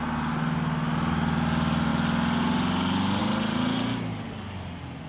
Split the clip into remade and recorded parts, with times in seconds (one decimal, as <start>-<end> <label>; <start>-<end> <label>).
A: 0.0-5.1 recorded